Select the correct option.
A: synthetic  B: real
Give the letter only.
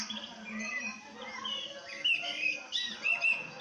B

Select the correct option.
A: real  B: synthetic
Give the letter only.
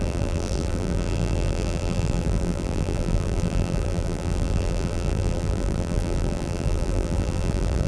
B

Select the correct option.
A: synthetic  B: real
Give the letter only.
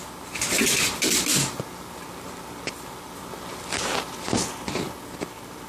B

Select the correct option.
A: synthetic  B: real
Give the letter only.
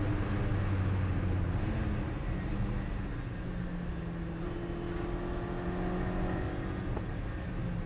B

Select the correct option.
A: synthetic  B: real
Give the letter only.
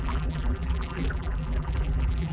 A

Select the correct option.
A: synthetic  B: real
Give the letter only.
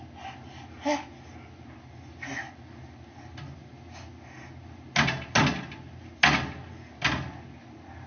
B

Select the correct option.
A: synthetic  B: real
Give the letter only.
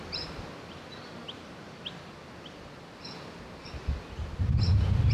B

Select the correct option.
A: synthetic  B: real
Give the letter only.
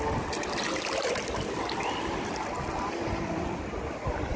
A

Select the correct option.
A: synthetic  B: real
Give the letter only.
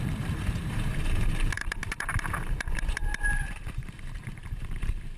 A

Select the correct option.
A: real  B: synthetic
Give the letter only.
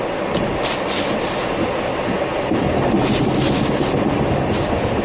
A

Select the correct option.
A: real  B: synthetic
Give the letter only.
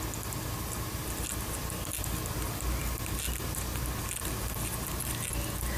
A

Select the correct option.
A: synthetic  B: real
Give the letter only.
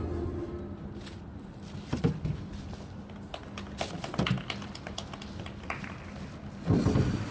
B